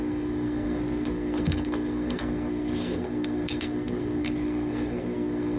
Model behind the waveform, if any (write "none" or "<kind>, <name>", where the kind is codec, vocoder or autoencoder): codec, SNAC